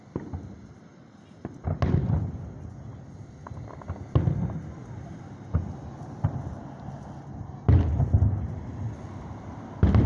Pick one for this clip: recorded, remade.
recorded